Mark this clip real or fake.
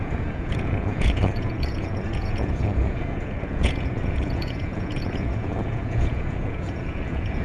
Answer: fake